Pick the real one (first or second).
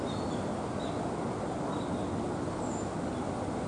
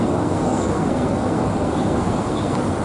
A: first